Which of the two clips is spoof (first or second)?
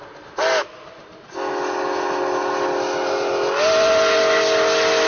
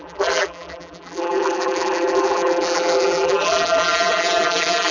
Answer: second